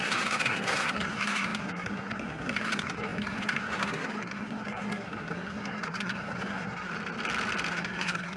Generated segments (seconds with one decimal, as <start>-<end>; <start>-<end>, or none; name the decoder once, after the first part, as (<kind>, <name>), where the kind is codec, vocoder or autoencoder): 0.0-6.9 (codec, SNAC); 7.7-8.4